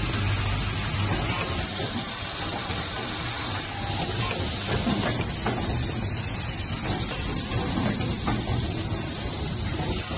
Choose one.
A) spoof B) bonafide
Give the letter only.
B